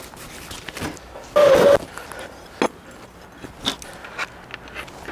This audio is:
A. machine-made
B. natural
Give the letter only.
B